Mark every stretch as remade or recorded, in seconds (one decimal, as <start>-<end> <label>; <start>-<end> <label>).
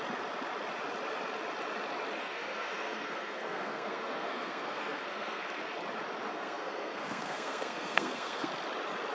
0.0-2.2 recorded; 2.2-5.4 remade; 5.4-6.3 recorded; 6.3-8.5 remade; 8.5-9.1 recorded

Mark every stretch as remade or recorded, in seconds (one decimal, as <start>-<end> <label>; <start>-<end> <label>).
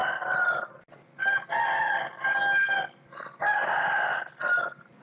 0.0-5.0 recorded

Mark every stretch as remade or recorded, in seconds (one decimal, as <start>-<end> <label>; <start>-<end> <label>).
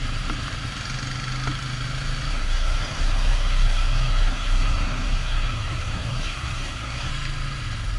0.0-2.3 recorded; 2.3-7.1 remade; 7.1-8.0 recorded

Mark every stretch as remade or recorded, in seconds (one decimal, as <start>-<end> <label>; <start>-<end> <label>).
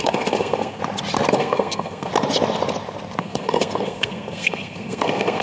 0.0-0.8 remade; 0.8-1.3 recorded; 1.3-2.1 remade; 2.1-3.2 recorded; 3.2-5.4 remade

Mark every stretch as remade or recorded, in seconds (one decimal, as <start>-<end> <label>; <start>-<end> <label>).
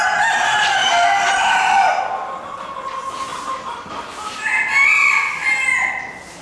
0.0-6.4 recorded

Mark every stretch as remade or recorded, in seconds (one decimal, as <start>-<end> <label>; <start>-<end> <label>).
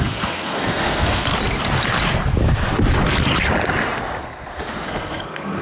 0.0-1.3 remade; 1.3-4.2 recorded; 4.2-5.6 remade